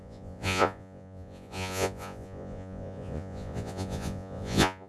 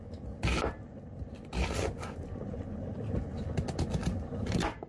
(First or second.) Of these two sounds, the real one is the second